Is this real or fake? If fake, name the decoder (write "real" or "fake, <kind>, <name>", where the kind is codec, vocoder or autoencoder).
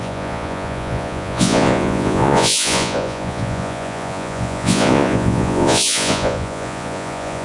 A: fake, vocoder, Vocos